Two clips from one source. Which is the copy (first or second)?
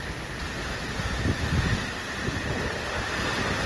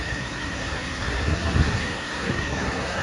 second